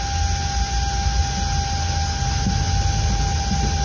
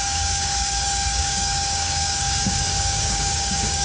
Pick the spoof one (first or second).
second